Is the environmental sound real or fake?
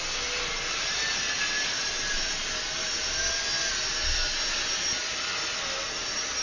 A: real